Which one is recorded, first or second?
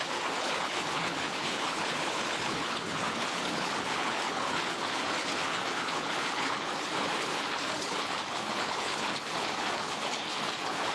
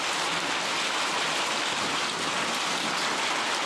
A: second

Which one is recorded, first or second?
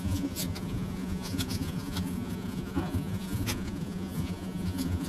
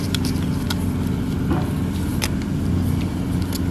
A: second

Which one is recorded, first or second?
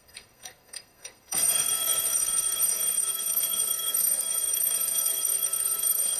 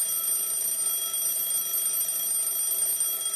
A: second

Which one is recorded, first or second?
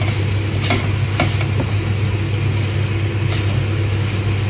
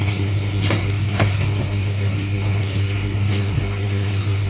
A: first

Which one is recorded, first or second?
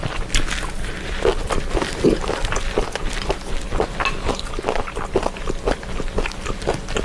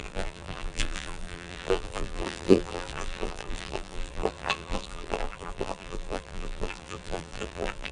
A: first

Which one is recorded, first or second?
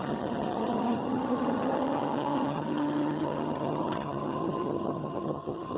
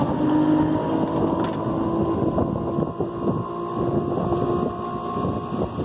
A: second